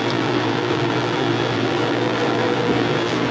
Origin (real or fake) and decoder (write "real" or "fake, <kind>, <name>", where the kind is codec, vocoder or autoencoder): fake, vocoder, BigVGAN v2